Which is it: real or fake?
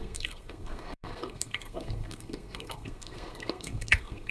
fake